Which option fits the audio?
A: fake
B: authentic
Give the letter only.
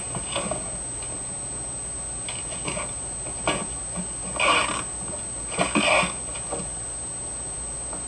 B